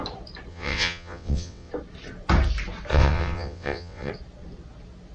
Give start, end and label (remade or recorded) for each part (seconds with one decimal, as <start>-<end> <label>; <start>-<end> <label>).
0.0-0.5 recorded; 0.5-1.7 remade; 1.7-2.9 recorded; 2.9-4.1 remade; 4.1-5.1 recorded